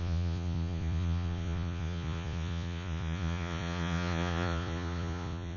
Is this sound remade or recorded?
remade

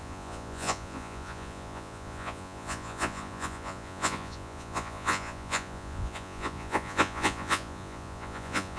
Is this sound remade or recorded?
remade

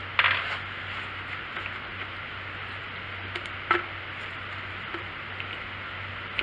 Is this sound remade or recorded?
recorded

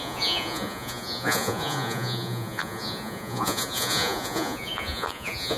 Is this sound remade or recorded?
remade